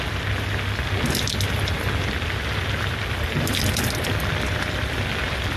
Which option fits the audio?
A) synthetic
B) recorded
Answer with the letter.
B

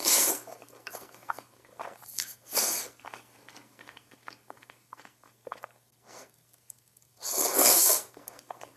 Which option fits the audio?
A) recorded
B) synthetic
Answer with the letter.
B